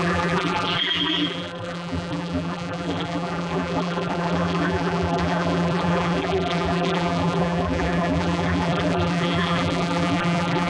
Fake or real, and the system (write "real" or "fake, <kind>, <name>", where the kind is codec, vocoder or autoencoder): fake, vocoder, BigVGAN v2